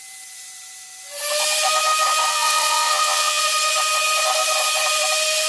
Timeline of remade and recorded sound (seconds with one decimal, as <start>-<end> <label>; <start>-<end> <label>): 0.0-2.3 recorded; 2.3-3.4 remade; 3.4-5.5 recorded